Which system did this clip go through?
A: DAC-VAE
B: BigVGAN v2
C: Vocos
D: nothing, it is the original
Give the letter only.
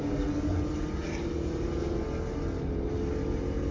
D